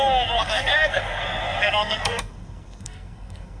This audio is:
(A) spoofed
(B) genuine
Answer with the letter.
A